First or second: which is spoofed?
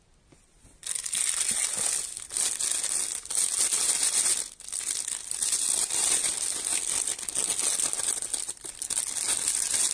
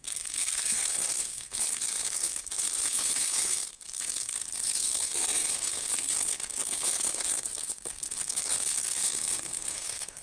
second